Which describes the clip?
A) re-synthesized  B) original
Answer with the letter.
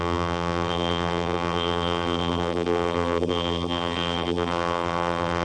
A